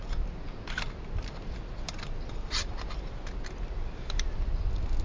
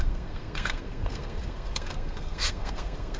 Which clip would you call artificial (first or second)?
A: second